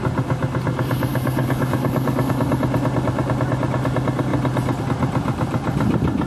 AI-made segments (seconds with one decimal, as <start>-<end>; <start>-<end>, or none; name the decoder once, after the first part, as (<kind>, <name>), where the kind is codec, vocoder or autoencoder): 1.1-2.3 (codec, DAC)